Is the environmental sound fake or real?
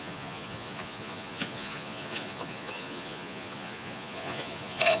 fake